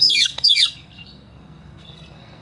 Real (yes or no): no